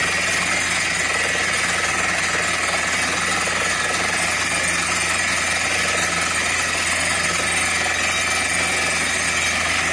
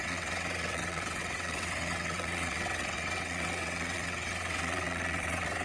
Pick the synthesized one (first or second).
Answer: second